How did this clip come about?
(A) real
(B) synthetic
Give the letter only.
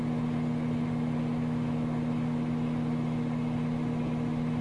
A